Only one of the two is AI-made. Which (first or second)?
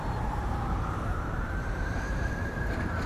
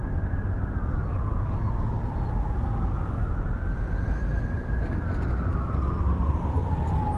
first